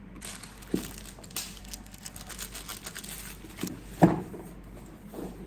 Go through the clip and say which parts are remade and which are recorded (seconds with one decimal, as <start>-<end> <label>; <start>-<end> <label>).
0.0-1.6 recorded; 1.6-2.3 remade; 2.3-5.5 recorded